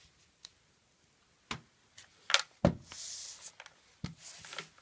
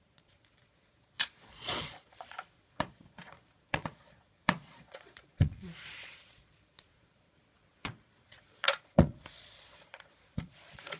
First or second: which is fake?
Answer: second